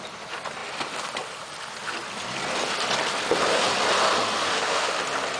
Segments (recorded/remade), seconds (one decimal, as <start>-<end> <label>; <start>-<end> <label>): 0.0-4.5 recorded; 4.5-5.0 remade; 5.0-5.4 recorded